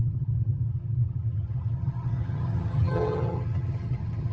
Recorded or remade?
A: remade